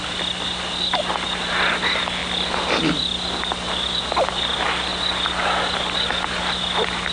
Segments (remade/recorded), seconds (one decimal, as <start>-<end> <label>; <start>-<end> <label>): 0.0-7.1 recorded